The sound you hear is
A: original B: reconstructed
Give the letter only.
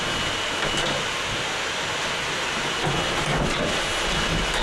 A